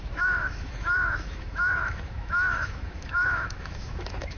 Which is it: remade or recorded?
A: remade